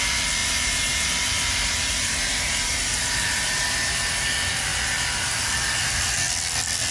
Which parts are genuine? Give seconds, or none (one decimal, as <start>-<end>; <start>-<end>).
0.0-0.4; 4.1-6.9

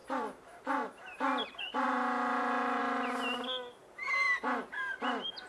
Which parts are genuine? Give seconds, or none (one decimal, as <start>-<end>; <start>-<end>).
2.8-5.5

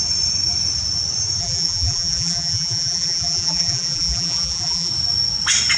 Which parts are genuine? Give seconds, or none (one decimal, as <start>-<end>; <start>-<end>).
0.0-1.4; 4.9-5.8

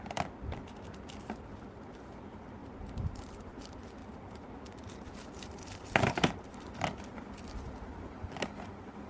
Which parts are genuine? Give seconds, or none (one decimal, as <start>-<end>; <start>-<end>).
0.0-2.6; 3.3-4.0; 6.9-9.1

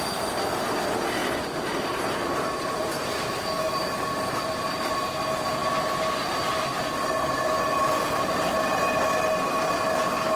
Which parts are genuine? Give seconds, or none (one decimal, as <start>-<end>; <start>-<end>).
0.0-2.2; 5.0-10.4